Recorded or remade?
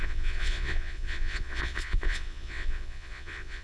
remade